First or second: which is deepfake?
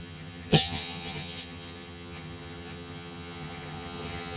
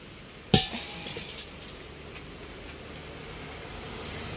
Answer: first